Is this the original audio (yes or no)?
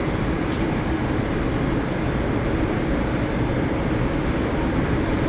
no